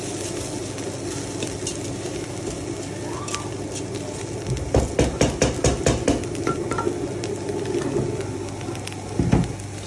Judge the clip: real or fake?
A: real